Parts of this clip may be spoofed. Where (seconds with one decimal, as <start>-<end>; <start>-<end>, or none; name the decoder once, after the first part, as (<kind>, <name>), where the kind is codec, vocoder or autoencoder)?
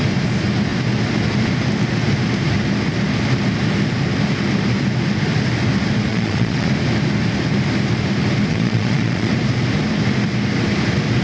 6.1-6.7 (vocoder, Vocos); 8.5-9.3